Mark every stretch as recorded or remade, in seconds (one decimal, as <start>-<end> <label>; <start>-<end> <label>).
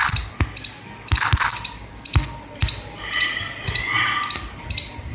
0.0-5.1 recorded